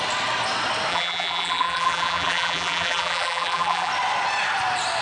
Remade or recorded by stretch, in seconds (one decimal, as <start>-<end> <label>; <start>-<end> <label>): 0.0-0.9 recorded; 0.9-3.9 remade; 3.9-5.0 recorded